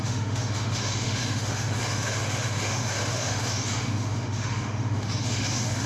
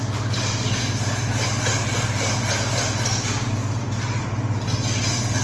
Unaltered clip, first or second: second